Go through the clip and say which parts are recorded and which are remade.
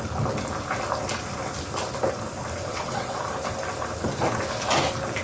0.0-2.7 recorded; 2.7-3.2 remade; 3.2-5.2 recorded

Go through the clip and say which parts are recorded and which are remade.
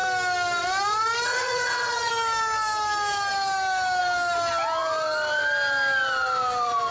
0.0-1.3 recorded; 1.3-2.1 remade; 2.1-6.9 recorded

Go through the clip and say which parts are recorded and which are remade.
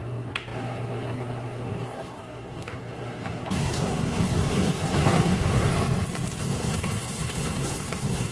0.0-5.7 remade; 5.7-6.4 recorded; 6.4-8.3 remade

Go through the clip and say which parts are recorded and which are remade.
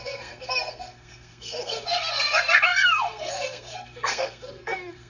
0.0-5.1 remade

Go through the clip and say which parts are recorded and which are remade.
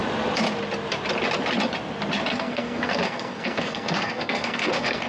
0.0-2.3 recorded; 2.3-5.1 remade